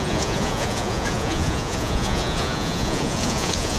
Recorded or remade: remade